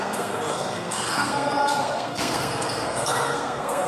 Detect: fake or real fake